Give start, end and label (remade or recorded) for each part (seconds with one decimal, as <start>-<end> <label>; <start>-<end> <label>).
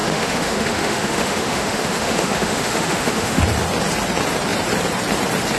0.0-3.4 remade; 3.4-5.6 recorded